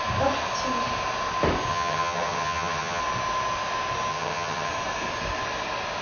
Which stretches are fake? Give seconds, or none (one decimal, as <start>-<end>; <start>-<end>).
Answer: 1.7-3.0; 4.1-4.7